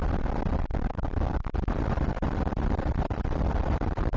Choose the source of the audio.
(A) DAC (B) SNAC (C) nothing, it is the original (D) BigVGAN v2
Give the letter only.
C